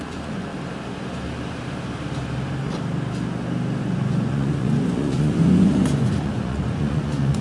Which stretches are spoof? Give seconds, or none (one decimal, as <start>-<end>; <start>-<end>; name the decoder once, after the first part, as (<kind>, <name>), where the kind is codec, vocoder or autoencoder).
0.0-0.5 (vocoder, Vocos); 3.8-7.4